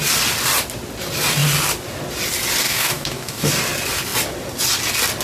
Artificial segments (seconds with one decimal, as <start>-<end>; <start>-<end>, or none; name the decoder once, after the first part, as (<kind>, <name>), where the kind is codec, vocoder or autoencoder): 2.6-3.5 (codec, DAC)